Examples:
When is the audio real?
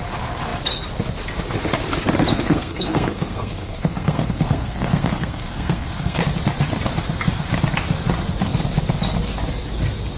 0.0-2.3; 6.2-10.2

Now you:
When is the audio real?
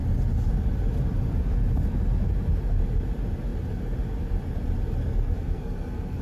0.0-5.0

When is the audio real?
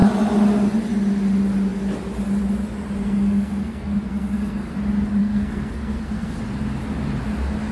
0.0-3.0; 4.7-5.2; 6.4-7.7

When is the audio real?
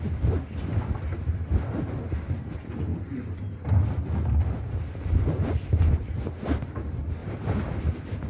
0.0-8.3